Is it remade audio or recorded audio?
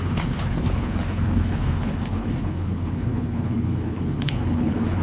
remade